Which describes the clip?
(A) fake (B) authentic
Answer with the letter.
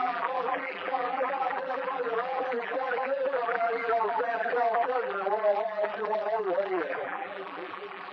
A